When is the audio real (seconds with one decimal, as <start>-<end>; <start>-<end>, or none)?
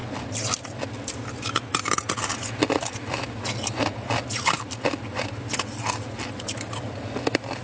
0.0-7.6